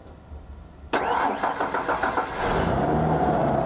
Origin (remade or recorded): recorded